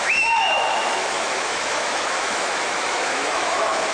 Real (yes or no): no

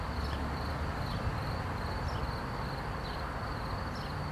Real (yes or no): yes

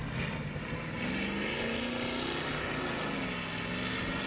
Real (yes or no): yes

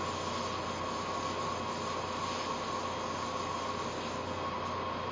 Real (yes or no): yes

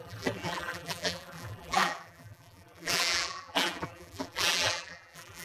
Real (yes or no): no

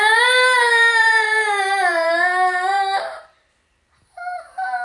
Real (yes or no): no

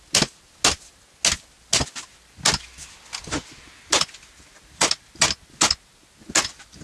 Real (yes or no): yes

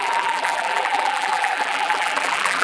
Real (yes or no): no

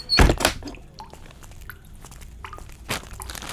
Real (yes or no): yes